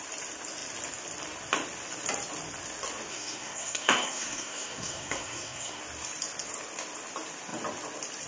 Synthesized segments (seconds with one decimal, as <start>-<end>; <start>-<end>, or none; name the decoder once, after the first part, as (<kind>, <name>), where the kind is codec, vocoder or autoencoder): 3.1-5.8 (codec, SNAC)